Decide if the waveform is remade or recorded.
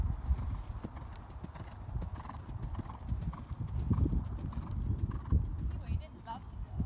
recorded